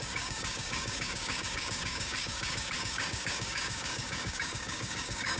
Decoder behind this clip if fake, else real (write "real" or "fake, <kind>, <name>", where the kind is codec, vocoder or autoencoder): fake, codec, DAC